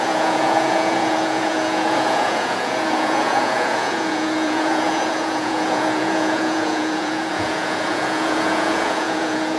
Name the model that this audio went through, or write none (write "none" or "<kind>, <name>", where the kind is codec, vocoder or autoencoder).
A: vocoder, Vocos